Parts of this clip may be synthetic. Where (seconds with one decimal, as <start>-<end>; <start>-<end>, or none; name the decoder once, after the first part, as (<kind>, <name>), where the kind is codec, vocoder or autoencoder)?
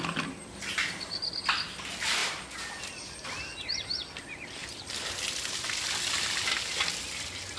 4.6-6.6 (vocoder, BigVGAN v2)